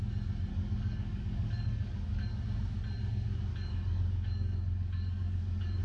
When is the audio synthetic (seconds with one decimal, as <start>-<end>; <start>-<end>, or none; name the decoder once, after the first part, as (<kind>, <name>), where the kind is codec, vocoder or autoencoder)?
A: 0.5-2.4 (codec, DAC); 3.5-5.8